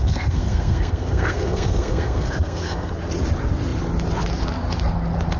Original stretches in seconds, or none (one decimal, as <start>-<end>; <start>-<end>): 2.9-5.4